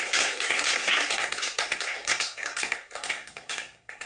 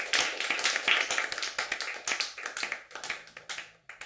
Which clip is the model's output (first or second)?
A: first